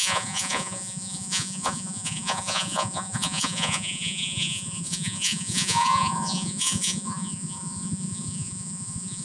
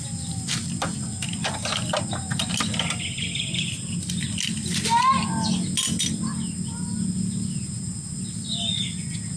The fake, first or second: first